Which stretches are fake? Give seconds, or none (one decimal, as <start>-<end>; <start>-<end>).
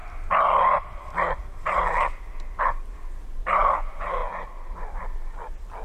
none